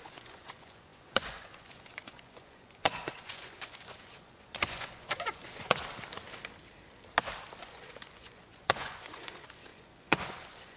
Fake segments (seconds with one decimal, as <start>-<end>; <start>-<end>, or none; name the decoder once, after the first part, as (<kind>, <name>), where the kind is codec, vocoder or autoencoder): 0.0-5.8 (vocoder, Vocos); 7.6-10.8